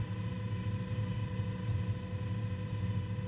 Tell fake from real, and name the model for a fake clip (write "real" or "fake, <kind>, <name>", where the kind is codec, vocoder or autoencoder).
real